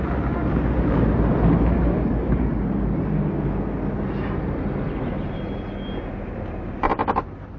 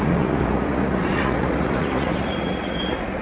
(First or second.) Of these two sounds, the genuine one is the first